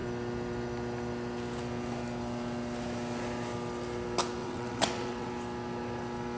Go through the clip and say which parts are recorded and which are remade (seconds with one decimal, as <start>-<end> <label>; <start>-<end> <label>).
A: 0.0-4.4 recorded; 4.4-5.3 remade; 5.3-6.4 recorded